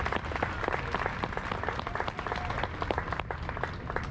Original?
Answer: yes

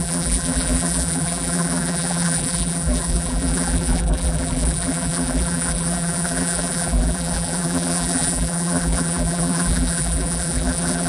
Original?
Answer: no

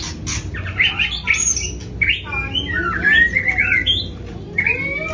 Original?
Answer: yes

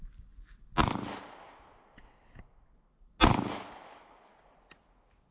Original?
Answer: yes